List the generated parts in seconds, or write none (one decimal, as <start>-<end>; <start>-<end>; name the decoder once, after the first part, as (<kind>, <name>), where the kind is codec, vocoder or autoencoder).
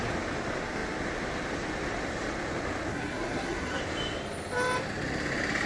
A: 2.9-3.8 (codec, SNAC)